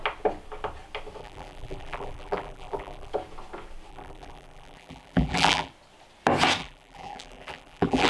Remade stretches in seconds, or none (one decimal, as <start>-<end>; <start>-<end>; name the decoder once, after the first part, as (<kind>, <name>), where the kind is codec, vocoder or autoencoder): 1.2-3.1 (vocoder, BigVGAN v2); 3.9-5.7; 6.6-8.1